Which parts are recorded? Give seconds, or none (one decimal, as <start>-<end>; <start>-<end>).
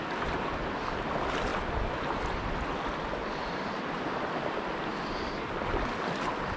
0.0-6.6